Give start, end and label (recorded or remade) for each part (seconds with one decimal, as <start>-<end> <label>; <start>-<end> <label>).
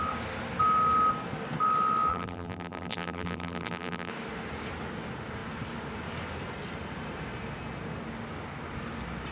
0.0-2.1 recorded; 2.1-4.1 remade; 4.1-9.3 recorded